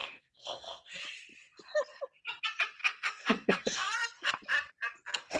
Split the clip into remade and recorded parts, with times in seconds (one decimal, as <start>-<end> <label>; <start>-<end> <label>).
0.0-1.0 remade; 1.0-2.8 recorded; 2.8-4.3 remade; 4.3-5.4 recorded